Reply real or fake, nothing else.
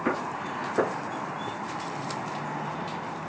real